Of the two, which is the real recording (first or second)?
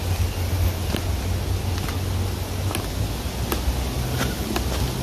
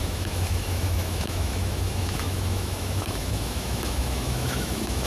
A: first